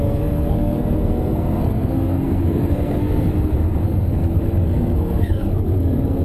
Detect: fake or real fake